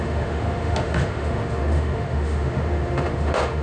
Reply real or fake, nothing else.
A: fake